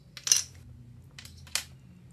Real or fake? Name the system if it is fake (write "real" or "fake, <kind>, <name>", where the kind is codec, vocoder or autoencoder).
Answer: real